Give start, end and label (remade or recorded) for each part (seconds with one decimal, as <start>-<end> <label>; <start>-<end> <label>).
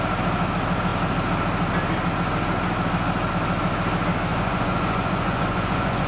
0.0-4.3 recorded; 4.3-6.1 remade